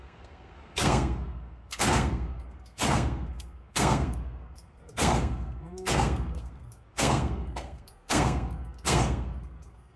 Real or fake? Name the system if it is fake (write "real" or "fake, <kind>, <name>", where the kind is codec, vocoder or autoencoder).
fake, codec, SNAC